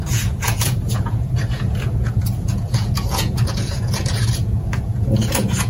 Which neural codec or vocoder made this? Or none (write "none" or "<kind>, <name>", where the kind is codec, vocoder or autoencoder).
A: vocoder, Vocos